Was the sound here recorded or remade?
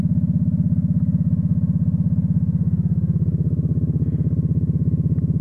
recorded